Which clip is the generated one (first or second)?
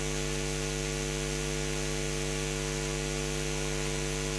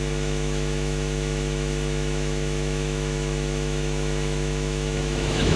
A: second